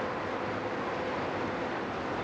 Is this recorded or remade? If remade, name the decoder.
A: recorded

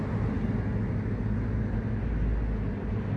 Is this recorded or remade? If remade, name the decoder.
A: recorded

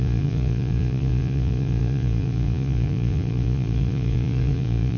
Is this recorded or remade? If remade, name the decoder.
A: remade, vocoder, Vocos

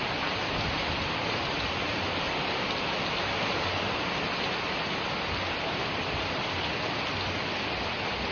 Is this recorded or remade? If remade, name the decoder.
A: recorded